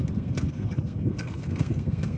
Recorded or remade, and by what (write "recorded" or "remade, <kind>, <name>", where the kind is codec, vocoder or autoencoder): remade, codec, SNAC